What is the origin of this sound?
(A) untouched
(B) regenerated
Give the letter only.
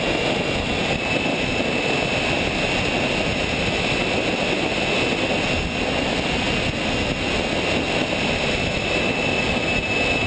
A